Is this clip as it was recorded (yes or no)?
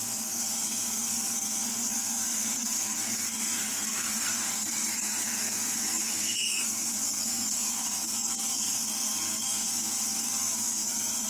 no